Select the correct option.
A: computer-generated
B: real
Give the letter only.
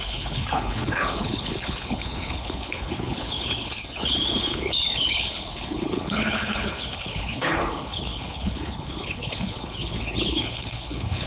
A